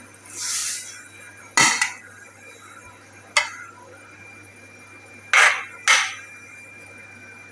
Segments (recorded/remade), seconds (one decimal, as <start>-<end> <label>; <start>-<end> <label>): 0.0-7.5 recorded